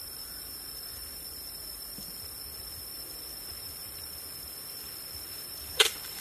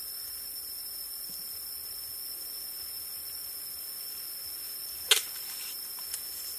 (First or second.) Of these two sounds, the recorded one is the second